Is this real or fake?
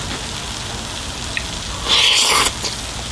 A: real